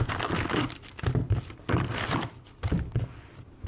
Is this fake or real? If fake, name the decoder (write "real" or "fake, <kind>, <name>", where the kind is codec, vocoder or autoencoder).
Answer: real